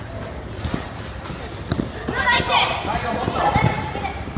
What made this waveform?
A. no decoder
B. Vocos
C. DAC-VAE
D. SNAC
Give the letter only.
A